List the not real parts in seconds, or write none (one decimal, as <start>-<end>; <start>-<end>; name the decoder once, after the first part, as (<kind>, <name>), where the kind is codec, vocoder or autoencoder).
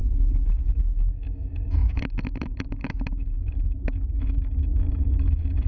0.6-5.7 (autoencoder, DAC-VAE)